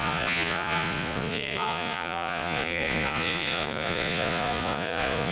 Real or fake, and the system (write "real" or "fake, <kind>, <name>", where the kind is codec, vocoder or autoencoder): fake, vocoder, Vocos